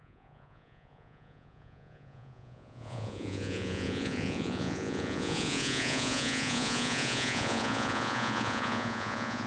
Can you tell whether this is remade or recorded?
remade